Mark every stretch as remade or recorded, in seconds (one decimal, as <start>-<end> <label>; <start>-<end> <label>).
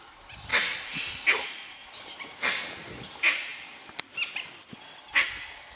0.0-5.8 recorded